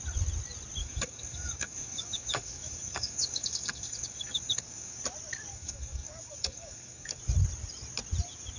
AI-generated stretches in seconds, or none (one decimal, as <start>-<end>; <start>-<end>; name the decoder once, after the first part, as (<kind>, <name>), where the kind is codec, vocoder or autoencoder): 0.8-5.0 (codec, DAC); 5.5-7.2